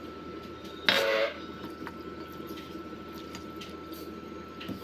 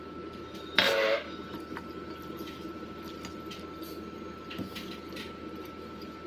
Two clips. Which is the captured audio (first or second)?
first